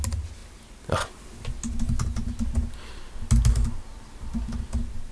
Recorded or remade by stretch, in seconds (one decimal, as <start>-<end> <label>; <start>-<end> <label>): 0.0-5.1 recorded